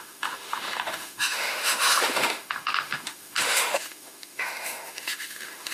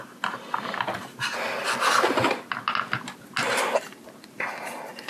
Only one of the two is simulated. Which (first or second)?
first